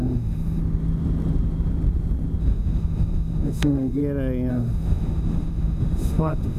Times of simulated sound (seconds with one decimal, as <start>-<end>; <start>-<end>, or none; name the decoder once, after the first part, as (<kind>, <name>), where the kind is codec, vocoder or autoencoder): 0.0-0.6 (autoencoder, DAC-VAE); 2.4-4.0; 4.5-6.6